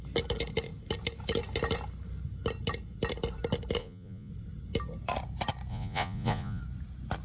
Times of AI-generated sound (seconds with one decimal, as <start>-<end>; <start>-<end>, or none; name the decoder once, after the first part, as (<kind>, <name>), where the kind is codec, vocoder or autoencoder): 3.8-4.3 (vocoder, Vocos); 5.7-6.6